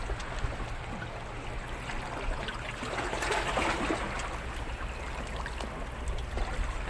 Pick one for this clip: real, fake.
real